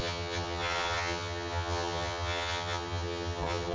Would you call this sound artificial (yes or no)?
yes